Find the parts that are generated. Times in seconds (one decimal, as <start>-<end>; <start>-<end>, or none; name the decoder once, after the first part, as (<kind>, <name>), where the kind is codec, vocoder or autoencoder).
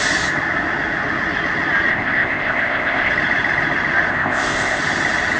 1.9-3.1 (codec, ZipCodec); 4.1-4.8